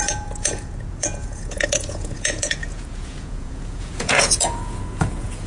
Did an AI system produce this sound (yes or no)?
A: yes